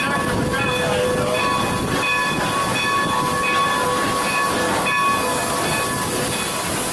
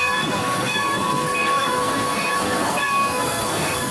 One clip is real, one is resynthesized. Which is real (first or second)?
first